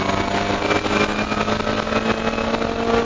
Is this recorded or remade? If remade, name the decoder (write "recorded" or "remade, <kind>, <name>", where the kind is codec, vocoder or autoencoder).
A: recorded